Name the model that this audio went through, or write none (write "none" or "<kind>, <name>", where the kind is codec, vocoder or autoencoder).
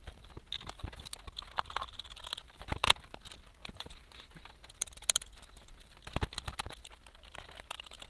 vocoder, BigVGAN v2